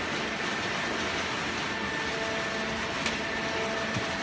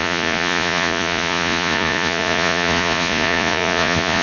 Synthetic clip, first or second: second